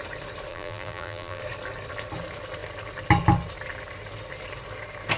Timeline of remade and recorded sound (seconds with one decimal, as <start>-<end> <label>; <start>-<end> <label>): 0.0-0.5 recorded; 0.5-1.4 remade; 1.4-5.2 recorded